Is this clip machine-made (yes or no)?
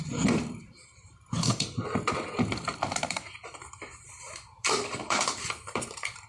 yes